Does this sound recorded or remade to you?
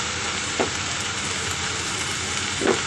remade